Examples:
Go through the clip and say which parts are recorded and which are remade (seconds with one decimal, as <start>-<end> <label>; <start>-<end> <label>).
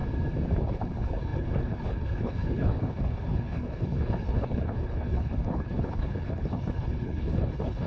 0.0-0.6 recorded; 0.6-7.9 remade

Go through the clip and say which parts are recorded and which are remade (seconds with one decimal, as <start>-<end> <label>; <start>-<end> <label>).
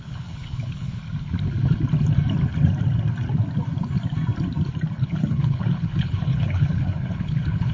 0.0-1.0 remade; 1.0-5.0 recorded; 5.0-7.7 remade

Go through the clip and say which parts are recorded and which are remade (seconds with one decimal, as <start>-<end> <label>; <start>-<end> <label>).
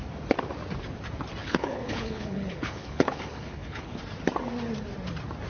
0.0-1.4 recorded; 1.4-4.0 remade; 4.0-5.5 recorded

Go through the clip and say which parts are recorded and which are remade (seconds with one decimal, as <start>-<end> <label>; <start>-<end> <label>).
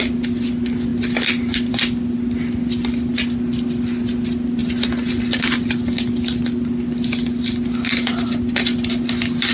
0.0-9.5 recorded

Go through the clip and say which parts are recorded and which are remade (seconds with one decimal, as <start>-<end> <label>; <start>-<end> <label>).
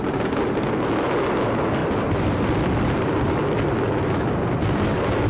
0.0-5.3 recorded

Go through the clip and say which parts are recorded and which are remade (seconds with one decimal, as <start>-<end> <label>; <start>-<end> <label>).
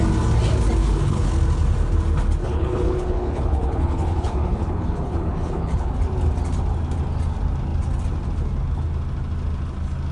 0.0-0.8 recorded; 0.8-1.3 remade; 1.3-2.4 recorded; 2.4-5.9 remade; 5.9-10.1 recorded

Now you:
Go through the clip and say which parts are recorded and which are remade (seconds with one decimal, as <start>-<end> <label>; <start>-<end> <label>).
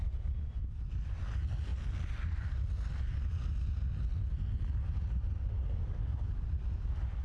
0.0-7.2 recorded